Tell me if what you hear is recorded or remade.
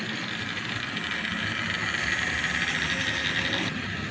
recorded